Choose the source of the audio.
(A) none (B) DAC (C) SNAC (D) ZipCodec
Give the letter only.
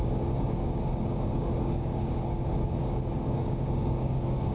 B